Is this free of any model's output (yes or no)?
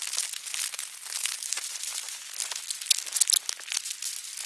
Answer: yes